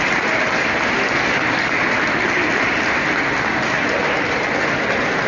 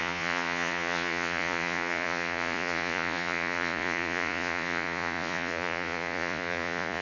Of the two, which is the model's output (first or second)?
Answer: second